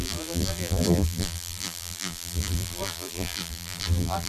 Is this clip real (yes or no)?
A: no